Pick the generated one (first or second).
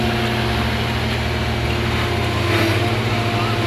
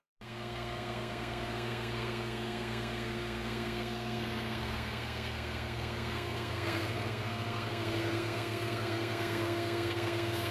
second